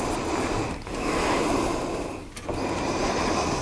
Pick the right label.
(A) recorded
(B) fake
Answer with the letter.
A